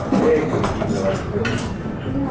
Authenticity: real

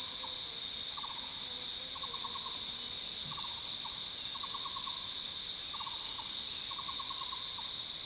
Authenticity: real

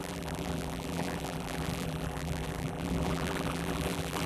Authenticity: fake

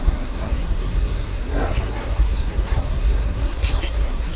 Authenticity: fake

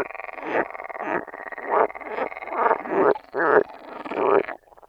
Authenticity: real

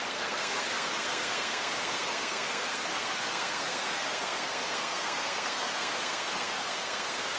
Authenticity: fake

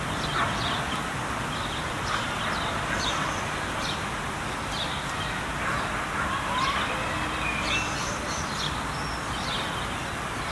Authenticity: real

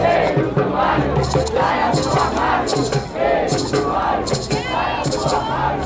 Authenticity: real